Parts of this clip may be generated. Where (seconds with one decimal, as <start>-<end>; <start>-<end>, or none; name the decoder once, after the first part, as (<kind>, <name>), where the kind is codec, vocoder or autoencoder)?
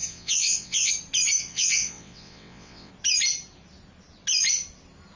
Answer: 0.0-0.9 (vocoder, WaveNeXt); 1.4-2.9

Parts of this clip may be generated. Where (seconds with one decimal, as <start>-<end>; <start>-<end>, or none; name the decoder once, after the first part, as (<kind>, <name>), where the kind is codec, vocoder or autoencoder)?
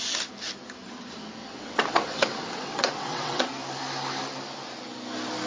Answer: 1.4-3.4 (vocoder, WaveNeXt)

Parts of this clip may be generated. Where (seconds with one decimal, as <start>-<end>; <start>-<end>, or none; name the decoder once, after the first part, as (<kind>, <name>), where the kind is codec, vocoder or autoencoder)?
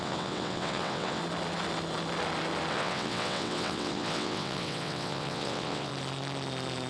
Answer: 0.0-1.2 (vocoder, WaveNeXt); 2.7-5.9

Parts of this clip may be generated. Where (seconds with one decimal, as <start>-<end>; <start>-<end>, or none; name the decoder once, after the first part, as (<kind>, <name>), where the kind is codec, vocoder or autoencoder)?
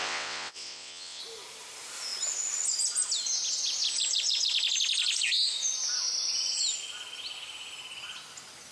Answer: 0.0-1.2 (vocoder, WaveNeXt)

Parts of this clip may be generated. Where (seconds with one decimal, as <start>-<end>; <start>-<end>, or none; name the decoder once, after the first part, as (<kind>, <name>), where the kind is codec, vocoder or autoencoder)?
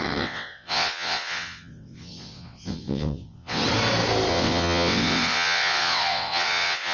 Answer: 0.0-3.6 (vocoder, WaveNeXt); 4.3-6.9